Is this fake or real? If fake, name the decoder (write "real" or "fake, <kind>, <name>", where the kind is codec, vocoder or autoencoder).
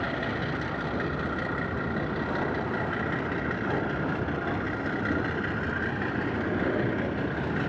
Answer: real